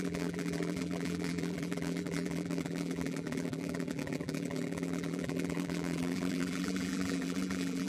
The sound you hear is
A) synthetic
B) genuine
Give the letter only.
A